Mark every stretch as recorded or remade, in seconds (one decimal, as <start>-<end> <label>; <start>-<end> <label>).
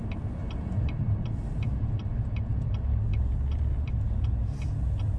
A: 0.0-5.2 recorded